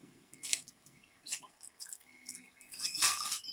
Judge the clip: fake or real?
fake